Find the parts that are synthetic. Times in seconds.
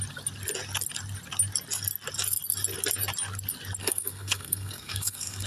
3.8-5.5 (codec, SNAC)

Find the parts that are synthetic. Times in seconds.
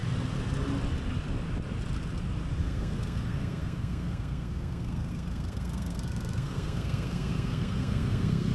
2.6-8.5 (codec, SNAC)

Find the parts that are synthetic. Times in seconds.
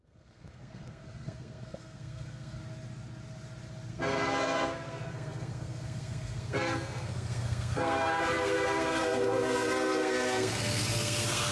0.0-2.6 (codec, SNAC); 3.9-11.5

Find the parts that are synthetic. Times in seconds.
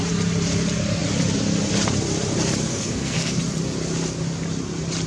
2.7-3.4 (codec, SNAC)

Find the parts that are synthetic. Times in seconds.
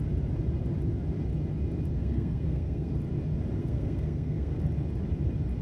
2.0-2.9 (codec, SNAC); 3.6-4.6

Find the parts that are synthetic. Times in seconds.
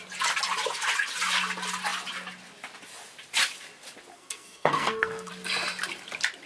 4.1-5.3 (codec, SNAC)